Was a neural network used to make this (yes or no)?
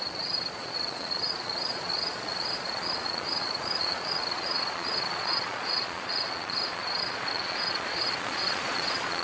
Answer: yes